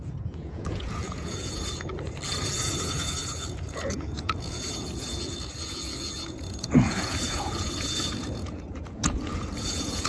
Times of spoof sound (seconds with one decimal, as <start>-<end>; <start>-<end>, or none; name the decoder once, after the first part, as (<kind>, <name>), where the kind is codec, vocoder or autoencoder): 0.0-1.9 (vocoder, Vocos); 2.6-10.1